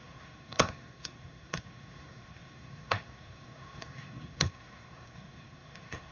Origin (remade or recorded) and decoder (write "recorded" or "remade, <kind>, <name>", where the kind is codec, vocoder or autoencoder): remade, codec, SNAC